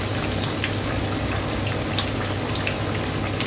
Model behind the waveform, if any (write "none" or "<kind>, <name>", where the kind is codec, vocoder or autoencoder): none